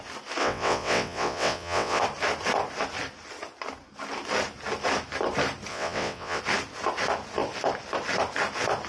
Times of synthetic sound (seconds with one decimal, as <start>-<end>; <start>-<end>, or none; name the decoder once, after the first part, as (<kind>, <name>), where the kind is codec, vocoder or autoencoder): 0.4-2.0 (vocoder, WaveNeXt); 5.7-6.4